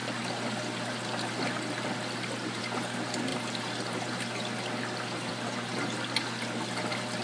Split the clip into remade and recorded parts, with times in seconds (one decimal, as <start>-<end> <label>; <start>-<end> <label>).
0.0-3.3 recorded; 3.3-5.3 remade; 5.3-5.7 recorded; 5.7-7.2 remade